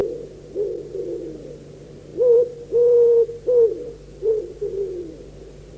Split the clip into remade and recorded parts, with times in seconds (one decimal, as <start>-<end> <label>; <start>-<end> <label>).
0.0-0.9 recorded; 0.9-5.8 remade